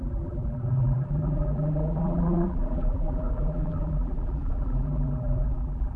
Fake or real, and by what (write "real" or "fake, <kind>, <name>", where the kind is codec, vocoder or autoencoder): fake, vocoder, BigVGAN v2